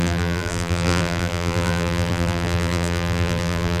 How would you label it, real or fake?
fake